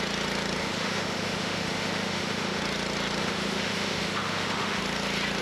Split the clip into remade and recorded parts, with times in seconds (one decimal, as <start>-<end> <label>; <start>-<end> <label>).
0.0-0.6 recorded; 0.6-2.6 remade; 2.6-3.2 recorded; 3.2-4.8 remade; 4.8-5.4 recorded